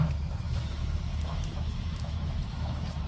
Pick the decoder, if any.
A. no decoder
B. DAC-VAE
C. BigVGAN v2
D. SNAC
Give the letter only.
B